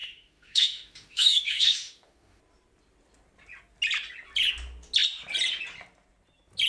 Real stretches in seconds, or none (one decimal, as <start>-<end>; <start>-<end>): 2.4-6.7